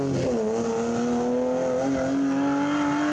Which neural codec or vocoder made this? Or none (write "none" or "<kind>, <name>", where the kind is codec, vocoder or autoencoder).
none